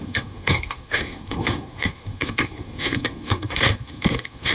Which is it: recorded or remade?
remade